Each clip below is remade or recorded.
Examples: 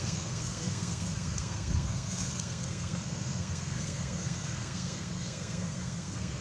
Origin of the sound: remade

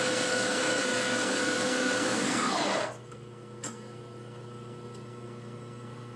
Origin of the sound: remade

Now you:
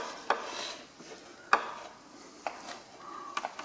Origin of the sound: recorded